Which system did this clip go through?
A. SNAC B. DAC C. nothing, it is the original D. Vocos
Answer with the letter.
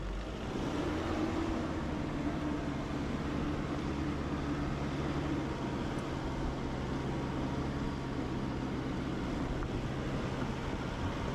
C